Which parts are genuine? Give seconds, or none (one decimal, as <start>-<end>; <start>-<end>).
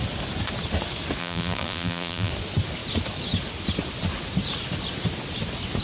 0.0-1.2; 2.3-5.8